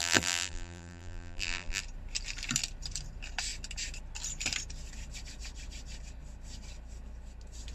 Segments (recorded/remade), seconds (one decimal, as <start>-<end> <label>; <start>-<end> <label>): 0.0-1.8 remade; 1.8-7.7 recorded

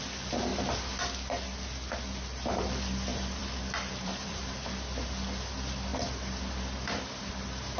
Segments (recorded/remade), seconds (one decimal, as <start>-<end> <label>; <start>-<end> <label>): 0.0-0.5 recorded; 0.5-1.0 remade; 1.0-3.1 recorded; 3.1-4.5 remade; 4.5-5.9 recorded; 5.9-7.3 remade; 7.3-7.8 recorded

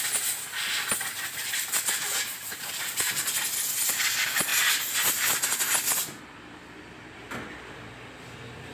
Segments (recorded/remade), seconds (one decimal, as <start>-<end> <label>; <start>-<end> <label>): 0.0-4.5 remade; 4.5-6.2 recorded; 6.2-8.7 remade